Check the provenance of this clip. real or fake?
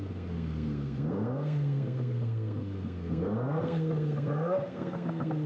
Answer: fake